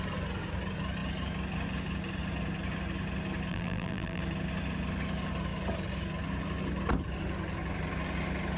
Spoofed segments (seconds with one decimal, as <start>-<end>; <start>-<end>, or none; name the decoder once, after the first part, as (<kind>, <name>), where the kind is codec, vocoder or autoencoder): 3.5-4.2 (vocoder, BigVGAN v2)